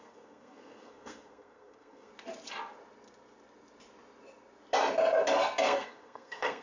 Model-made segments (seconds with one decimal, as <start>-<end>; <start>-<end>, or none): 0.0-2.1; 5.6-6.6